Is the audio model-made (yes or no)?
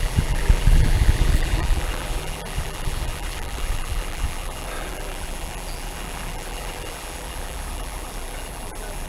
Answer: yes